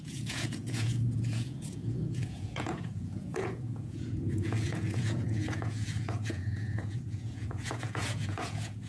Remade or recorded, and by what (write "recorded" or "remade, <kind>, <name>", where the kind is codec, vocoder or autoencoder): remade, vocoder, Vocos